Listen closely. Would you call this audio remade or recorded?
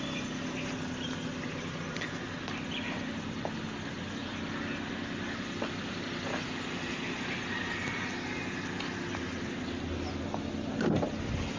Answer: recorded